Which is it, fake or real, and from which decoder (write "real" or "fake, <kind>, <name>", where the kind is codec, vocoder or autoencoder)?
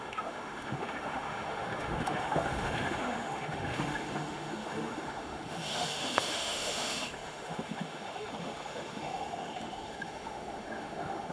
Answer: fake, autoencoder, DAC-VAE